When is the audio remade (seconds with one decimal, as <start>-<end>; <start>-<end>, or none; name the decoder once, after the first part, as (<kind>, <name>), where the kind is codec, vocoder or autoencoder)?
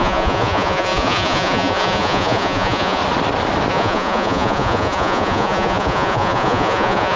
0.0-3.0 (vocoder, Vocos); 3.7-7.2